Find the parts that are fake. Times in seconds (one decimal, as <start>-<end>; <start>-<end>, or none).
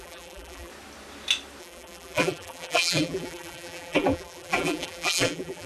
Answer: 0.0-0.7; 1.6-5.7